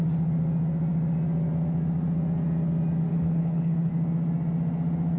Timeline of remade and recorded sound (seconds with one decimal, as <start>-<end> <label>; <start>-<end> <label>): 0.0-3.1 recorded; 3.1-3.9 remade; 3.9-5.2 recorded